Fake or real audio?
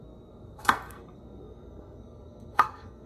fake